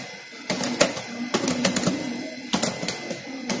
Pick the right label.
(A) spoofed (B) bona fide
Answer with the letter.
B